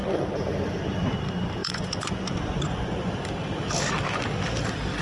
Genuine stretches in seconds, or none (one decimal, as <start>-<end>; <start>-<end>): 0.0-1.6; 3.1-5.0